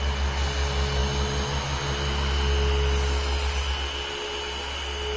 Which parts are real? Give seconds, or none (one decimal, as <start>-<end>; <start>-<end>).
0.0-5.2